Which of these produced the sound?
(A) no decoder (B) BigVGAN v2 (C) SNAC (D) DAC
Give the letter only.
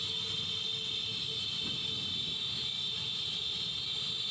A